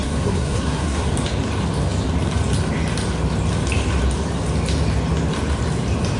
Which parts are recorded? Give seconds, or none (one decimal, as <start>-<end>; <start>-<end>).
1.1-6.2